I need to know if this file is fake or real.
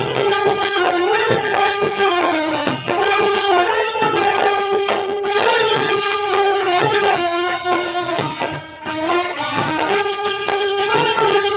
fake